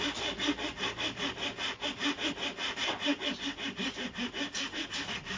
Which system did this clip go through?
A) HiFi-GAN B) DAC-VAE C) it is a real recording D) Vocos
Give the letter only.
C